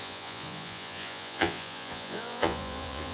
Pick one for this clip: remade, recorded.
remade